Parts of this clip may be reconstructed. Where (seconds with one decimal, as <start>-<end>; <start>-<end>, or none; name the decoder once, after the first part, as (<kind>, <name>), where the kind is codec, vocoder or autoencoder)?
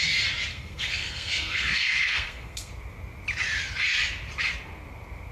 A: 0.5-2.7 (codec, SNAC)